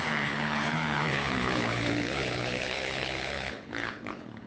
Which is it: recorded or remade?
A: remade